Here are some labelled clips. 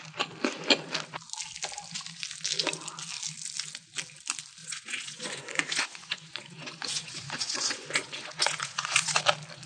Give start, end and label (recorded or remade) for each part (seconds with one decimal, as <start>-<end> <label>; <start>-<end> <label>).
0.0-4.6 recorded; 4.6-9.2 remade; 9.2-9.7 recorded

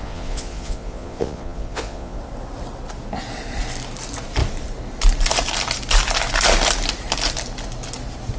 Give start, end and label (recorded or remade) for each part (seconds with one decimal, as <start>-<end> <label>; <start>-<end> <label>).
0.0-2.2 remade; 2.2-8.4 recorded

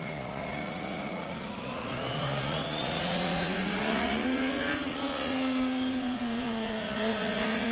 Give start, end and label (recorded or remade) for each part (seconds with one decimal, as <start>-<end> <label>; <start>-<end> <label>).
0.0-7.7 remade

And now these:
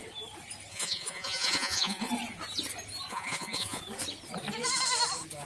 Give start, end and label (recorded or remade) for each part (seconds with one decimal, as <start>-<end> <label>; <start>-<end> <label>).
0.0-0.7 recorded; 0.7-2.1 remade; 2.1-3.1 recorded; 3.1-3.8 remade; 3.8-5.5 recorded

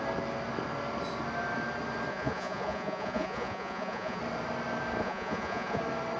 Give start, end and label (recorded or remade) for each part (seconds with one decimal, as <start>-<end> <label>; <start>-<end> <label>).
0.0-2.1 recorded; 2.1-4.2 remade; 4.2-5.0 recorded; 5.0-5.8 remade; 5.8-6.2 recorded

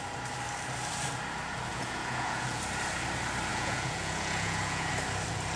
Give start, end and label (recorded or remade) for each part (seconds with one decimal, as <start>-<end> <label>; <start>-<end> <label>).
0.0-1.7 recorded; 1.7-2.6 remade; 2.6-3.5 recorded; 3.5-4.9 remade; 4.9-5.6 recorded

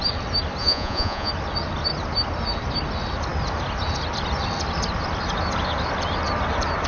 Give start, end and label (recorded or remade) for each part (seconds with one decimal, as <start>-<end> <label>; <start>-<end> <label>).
0.0-0.6 recorded; 0.6-1.3 remade; 1.3-6.9 recorded

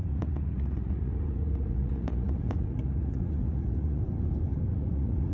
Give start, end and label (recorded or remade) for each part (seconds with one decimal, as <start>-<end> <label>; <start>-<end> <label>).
0.0-4.0 remade; 4.0-4.7 recorded; 4.7-5.3 remade